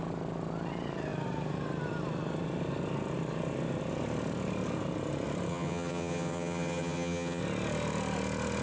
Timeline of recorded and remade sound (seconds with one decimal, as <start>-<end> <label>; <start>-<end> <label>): 0.0-5.5 recorded; 5.5-7.4 remade; 7.4-8.6 recorded